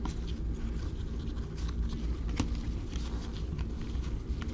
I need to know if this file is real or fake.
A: real